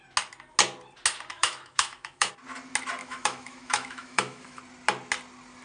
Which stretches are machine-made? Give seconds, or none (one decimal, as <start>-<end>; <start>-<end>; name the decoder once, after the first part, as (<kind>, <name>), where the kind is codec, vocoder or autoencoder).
1.3-2.3 (autoencoder, DAC-VAE); 3.0-4.6